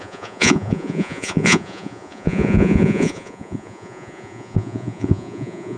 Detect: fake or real fake